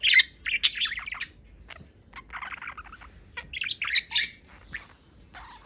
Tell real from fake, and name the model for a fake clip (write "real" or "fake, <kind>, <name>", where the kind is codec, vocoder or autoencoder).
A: real